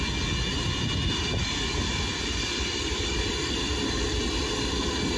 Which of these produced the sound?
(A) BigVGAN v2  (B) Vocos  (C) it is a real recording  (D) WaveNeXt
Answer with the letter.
C